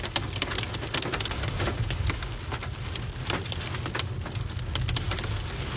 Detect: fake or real real